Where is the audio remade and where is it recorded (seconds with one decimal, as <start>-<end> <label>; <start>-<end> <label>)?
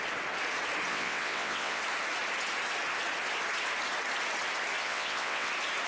0.0-0.9 recorded; 0.9-1.8 remade; 1.8-4.8 recorded; 4.8-5.5 remade; 5.5-5.9 recorded